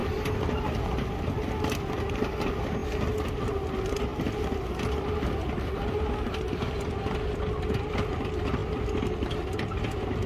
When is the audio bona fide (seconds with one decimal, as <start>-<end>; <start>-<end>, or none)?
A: 0.0-10.3